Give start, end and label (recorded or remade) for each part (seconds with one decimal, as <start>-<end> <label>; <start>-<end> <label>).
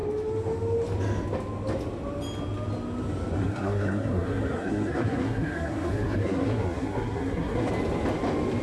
0.0-3.4 recorded; 3.4-7.7 remade; 7.7-8.6 recorded